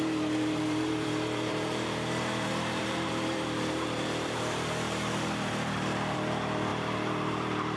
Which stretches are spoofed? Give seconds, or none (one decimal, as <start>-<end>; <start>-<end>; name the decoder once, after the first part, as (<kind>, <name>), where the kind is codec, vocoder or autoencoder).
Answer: 0.0-7.8 (vocoder, BigVGAN v2)